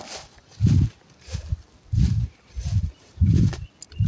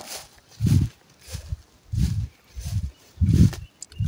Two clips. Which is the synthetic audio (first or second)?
first